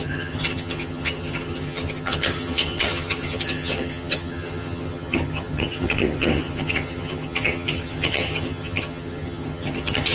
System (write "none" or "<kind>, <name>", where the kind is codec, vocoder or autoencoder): vocoder, HiFi-GAN